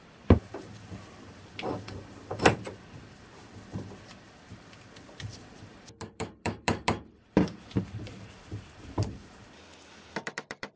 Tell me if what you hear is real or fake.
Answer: fake